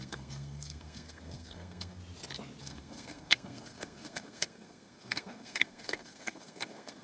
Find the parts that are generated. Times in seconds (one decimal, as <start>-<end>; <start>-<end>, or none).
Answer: 0.0-2.0; 2.6-7.0